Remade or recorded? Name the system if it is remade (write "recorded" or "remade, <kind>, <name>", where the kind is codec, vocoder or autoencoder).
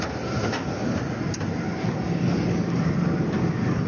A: recorded